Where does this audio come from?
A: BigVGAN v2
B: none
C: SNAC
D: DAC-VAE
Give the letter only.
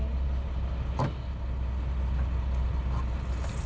B